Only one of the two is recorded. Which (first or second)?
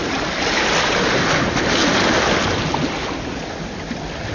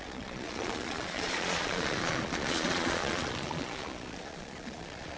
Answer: first